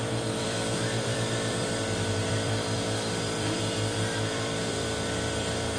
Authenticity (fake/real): fake